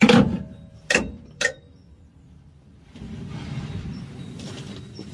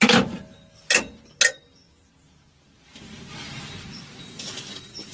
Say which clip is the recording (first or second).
second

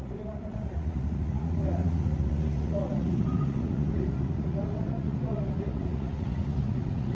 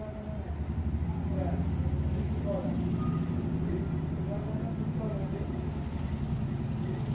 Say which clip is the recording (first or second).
second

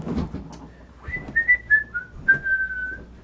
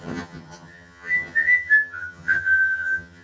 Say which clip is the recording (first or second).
first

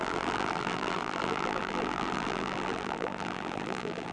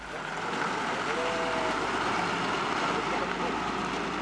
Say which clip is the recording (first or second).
second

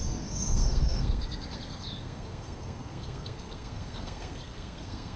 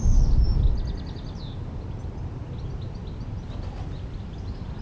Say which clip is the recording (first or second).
second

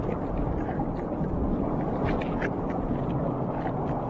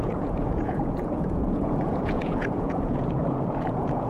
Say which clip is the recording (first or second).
first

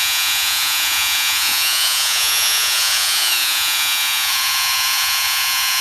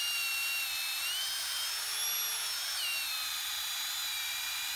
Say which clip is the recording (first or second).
second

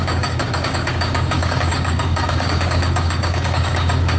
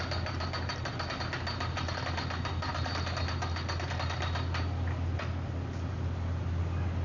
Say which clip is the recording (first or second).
second